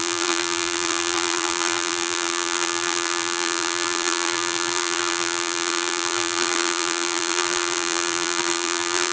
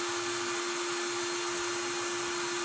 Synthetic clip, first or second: first